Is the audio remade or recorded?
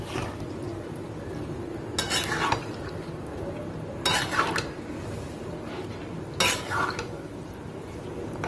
recorded